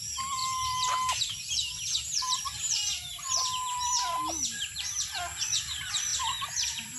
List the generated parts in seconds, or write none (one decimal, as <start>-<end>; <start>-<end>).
none